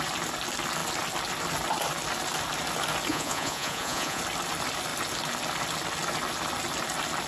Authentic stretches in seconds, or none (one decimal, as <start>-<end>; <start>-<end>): 0.0-3.1; 4.2-7.3